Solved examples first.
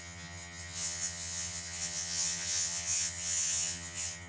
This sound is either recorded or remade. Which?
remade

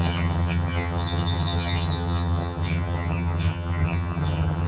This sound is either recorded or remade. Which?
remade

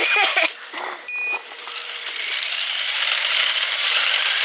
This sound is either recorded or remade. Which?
recorded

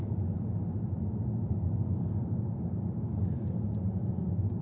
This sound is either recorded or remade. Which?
recorded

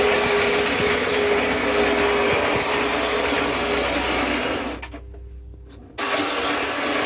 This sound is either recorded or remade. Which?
recorded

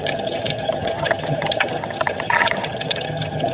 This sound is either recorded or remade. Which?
remade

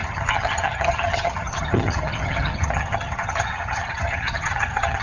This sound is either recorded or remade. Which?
remade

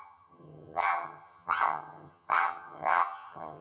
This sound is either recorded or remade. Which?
remade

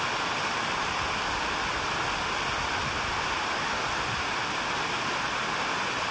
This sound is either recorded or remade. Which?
recorded